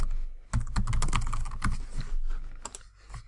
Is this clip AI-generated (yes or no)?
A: no